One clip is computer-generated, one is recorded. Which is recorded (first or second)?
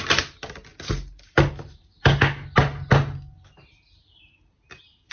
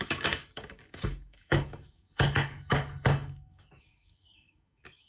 first